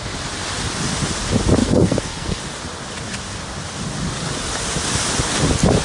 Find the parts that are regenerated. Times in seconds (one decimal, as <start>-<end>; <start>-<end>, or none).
1.6-2.4